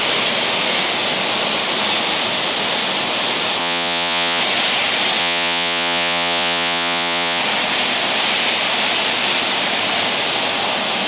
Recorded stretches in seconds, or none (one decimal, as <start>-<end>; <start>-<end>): 0.0-3.6; 4.4-5.2; 7.4-11.1